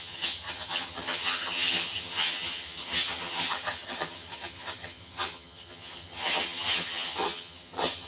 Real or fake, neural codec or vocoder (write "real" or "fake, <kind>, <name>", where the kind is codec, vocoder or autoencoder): fake, vocoder, HiFi-GAN